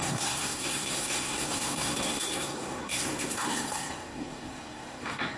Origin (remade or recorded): remade